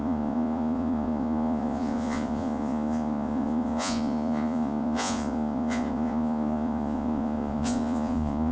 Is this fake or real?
fake